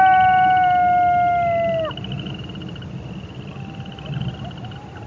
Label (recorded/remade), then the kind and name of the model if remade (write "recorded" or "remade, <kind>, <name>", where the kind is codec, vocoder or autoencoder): recorded